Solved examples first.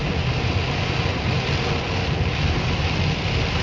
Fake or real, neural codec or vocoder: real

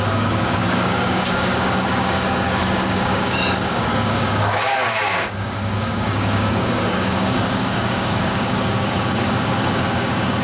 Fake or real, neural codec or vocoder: fake, codec, DAC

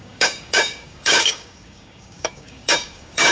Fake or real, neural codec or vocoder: fake, codec, DAC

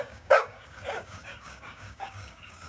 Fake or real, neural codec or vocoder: fake, codec, DAC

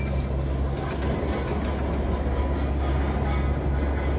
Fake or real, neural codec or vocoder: real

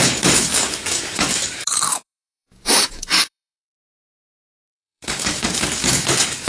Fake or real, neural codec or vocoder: fake, codec, DAC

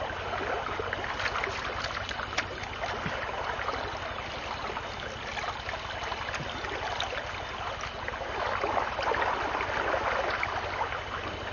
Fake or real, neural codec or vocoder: real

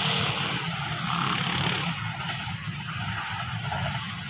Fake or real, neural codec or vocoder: real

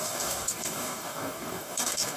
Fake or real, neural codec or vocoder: fake, codec, DAC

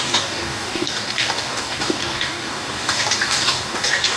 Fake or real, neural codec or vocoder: fake, codec, DAC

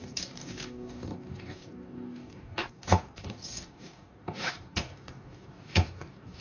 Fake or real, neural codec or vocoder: fake, codec, DAC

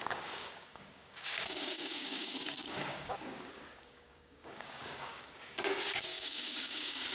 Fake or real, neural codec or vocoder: fake, codec, DAC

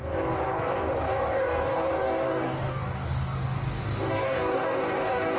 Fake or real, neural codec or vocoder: fake, codec, DAC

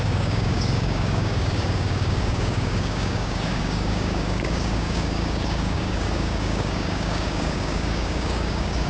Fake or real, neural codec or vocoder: fake, codec, DAC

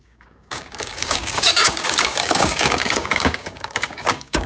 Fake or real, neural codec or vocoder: fake, codec, DAC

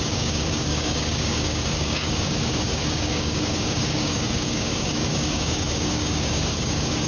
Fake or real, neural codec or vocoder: fake, codec, DAC